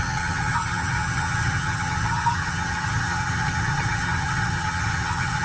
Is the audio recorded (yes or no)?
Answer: no